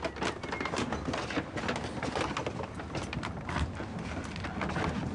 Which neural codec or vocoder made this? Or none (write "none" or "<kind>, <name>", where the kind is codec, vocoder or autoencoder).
none